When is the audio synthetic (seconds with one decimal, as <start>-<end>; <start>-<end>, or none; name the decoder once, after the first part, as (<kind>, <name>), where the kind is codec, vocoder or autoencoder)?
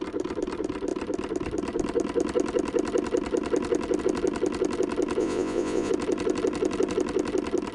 5.2-5.9 (vocoder, Vocos)